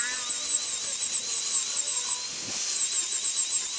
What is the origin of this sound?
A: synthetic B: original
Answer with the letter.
B